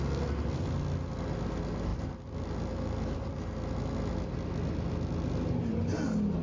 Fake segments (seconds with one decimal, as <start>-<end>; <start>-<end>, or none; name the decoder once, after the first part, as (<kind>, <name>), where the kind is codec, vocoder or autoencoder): none